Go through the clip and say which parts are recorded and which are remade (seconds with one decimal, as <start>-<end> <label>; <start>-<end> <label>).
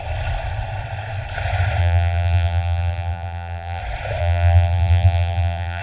0.0-1.8 recorded; 1.8-3.8 remade; 3.8-4.2 recorded; 4.2-5.8 remade